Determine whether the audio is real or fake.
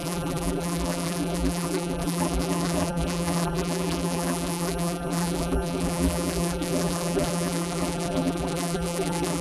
fake